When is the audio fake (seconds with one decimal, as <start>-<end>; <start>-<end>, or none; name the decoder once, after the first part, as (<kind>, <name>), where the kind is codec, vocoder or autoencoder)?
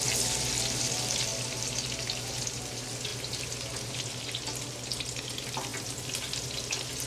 none